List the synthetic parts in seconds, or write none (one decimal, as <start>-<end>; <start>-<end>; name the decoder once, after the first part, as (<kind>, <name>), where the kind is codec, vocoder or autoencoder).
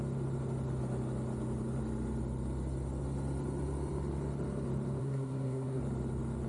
5.0-5.8 (codec, SNAC)